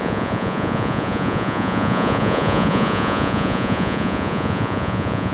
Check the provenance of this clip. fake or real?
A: fake